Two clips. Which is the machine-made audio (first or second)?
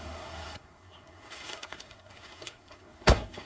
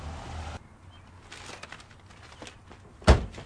first